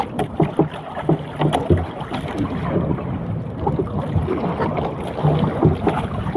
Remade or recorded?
recorded